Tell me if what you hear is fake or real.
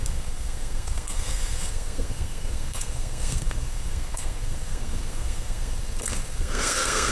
fake